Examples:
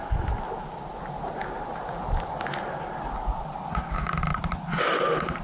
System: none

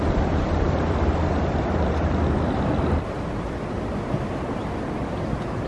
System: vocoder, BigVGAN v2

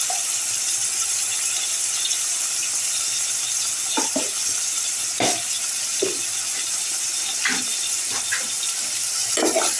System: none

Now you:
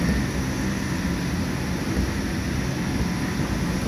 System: none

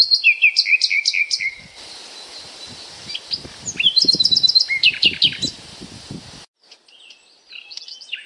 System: none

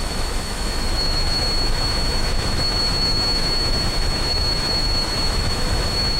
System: autoencoder, DAC-VAE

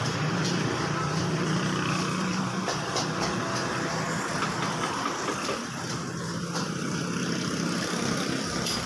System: none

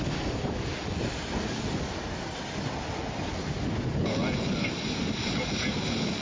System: none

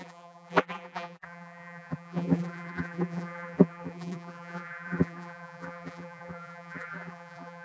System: vocoder, BigVGAN v2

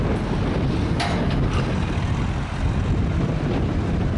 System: none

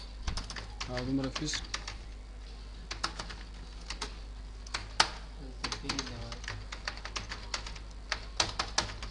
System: none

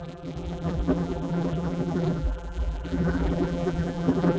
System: vocoder, BigVGAN v2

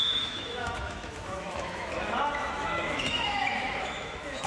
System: autoencoder, DAC-VAE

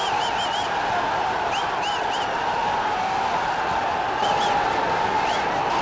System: none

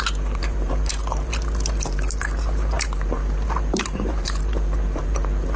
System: vocoder, BigVGAN v2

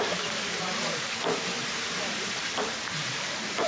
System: vocoder, BigVGAN v2